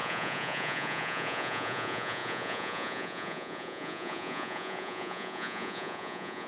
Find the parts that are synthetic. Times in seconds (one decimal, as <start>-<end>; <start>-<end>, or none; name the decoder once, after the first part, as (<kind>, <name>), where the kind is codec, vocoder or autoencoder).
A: 0.0-6.5 (vocoder, Vocos)